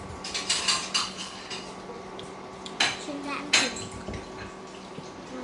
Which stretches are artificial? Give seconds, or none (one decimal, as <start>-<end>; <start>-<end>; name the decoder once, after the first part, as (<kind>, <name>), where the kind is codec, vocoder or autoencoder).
1.0-1.5 (codec, HILCodec)